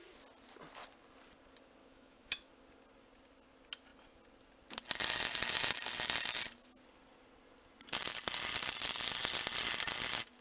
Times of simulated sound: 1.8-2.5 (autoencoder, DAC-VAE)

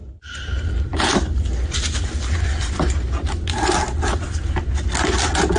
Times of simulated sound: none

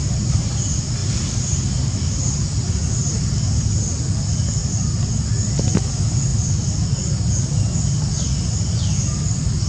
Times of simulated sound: 0.0-0.6 (vocoder, BigVGAN v2); 1.0-1.8; 4.6-5.1

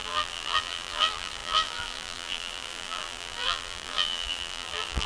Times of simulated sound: 0.0-5.1 (vocoder, BigVGAN v2)